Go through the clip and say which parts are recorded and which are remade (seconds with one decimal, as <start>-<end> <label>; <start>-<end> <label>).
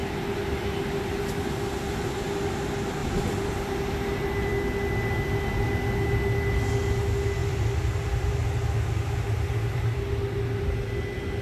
0.0-3.0 recorded; 3.0-3.7 remade; 3.7-7.4 recorded; 7.4-8.3 remade; 8.3-11.4 recorded